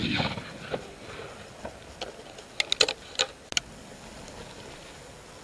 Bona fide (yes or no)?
yes